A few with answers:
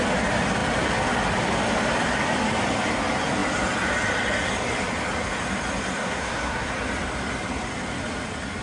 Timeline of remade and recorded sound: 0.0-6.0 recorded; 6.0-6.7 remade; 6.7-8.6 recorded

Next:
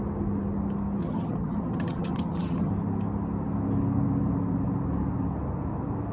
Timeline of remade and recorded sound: 0.0-1.0 recorded; 1.0-2.7 remade; 2.7-6.1 recorded

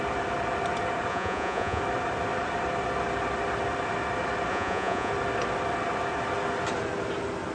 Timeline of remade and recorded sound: 0.0-1.1 recorded; 1.1-1.8 remade; 1.8-4.5 recorded; 4.5-5.1 remade; 5.1-7.5 recorded

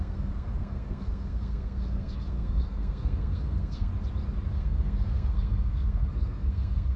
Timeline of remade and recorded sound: 0.0-3.9 remade; 3.9-4.5 recorded; 4.5-7.0 remade

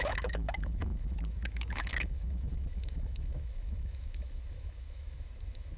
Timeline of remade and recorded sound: 0.0-5.8 remade